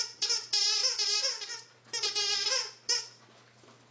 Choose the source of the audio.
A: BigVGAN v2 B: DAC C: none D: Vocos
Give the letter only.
C